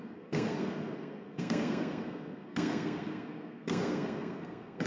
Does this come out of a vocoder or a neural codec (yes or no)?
yes